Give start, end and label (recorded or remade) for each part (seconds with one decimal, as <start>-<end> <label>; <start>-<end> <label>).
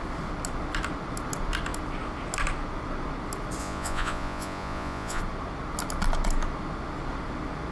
0.0-3.6 recorded; 3.6-5.2 remade; 5.2-7.7 recorded